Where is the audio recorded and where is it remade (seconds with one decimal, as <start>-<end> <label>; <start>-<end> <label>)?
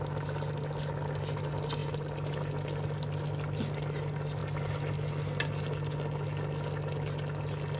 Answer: 0.0-7.8 recorded